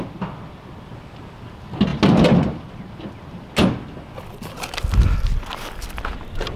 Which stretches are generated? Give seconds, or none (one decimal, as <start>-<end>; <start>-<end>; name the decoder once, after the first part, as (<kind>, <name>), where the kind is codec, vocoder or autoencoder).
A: none